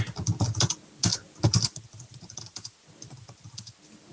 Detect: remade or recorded recorded